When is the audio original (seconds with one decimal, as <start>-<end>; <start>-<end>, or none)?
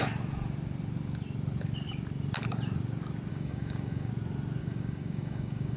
0.0-3.3; 4.1-4.6